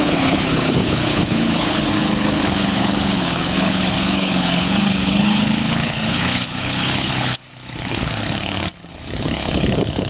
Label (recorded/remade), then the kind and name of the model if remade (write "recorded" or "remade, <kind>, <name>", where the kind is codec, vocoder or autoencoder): remade, codec, HILCodec